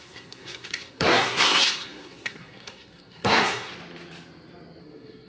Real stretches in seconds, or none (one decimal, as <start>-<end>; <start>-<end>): 3.7-4.8